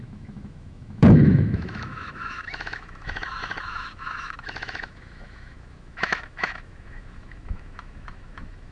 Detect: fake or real fake